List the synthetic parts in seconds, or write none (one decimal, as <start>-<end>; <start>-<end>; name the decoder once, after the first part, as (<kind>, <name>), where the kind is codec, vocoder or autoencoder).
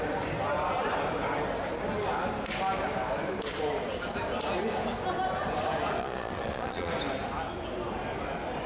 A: 6.0-6.9 (vocoder, Vocos)